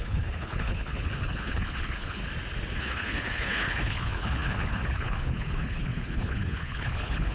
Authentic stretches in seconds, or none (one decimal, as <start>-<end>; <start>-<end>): 2.2-2.8